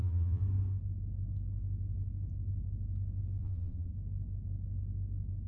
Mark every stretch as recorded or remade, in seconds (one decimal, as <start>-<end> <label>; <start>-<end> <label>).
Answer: 0.0-0.4 remade; 0.4-3.4 recorded; 3.4-3.9 remade; 3.9-5.5 recorded